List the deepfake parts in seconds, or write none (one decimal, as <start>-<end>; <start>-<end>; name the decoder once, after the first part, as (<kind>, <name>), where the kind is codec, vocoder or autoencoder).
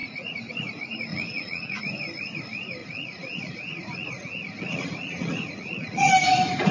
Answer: 0.0-0.5 (vocoder, Vocos); 1.1-1.8; 2.8-6.1